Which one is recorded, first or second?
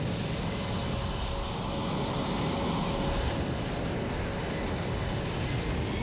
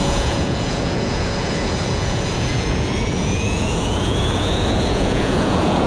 first